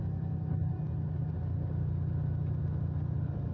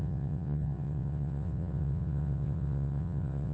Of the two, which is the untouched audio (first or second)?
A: first